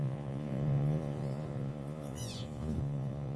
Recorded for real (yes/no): no